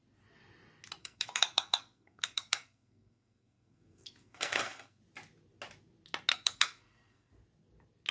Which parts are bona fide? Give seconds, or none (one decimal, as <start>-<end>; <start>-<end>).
0.0-1.0; 5.0-6.3; 7.3-8.1